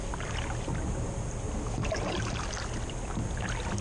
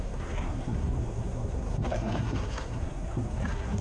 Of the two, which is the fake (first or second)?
second